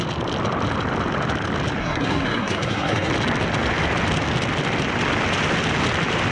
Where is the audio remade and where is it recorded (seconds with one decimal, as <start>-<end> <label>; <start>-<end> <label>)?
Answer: 0.0-1.8 recorded; 1.8-3.1 remade; 3.1-6.3 recorded